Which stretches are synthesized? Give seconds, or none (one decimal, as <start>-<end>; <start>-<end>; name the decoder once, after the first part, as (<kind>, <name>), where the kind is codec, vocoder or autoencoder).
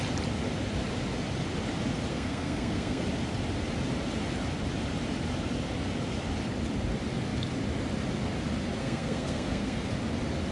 2.1-3.0 (codec, SNAC); 8.8-9.9